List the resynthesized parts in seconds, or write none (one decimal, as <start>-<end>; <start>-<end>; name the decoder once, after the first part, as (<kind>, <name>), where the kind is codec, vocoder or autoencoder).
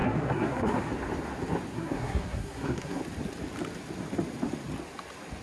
0.0-0.9 (codec, SNAC); 1.7-3.0